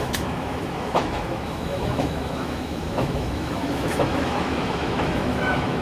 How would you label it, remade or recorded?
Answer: remade